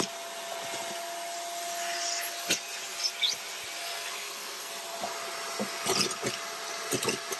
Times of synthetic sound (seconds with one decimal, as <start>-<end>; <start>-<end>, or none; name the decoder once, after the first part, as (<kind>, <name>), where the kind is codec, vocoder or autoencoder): 3.8-4.7 (codec, SNAC)